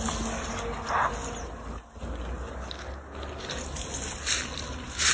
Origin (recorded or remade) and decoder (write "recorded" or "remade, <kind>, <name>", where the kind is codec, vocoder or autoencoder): recorded